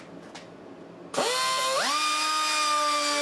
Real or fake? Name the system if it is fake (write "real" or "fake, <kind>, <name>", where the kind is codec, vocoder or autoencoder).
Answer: real